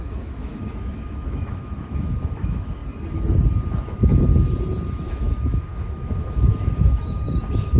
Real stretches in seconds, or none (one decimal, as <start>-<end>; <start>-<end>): 2.8-3.7; 4.3-4.9